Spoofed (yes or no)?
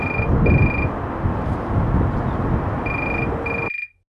no